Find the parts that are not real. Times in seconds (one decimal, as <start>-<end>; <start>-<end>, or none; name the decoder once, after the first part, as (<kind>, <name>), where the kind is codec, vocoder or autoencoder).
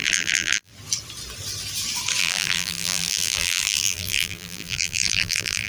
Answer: 0.0-0.7 (vocoder, BigVGAN v2); 2.2-5.7